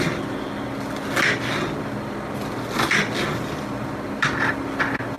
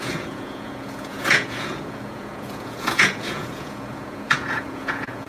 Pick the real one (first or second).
first